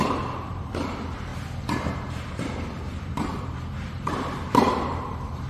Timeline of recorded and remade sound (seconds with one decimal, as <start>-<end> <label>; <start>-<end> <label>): 0.0-1.3 remade; 1.3-1.9 recorded; 1.9-5.5 remade